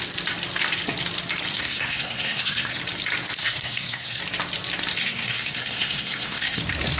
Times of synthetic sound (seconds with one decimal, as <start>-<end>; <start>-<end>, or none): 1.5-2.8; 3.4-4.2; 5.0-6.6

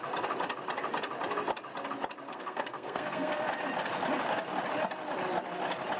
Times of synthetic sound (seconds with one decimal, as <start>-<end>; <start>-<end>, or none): 2.3-3.3

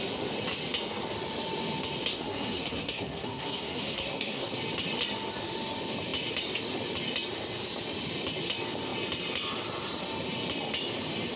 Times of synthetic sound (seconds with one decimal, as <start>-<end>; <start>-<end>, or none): 2.1-4.5

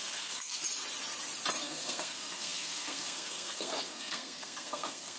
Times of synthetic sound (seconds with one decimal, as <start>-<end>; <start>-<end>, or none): 0.0-0.6; 1.6-5.2